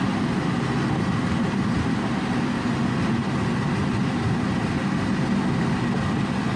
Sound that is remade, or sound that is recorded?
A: recorded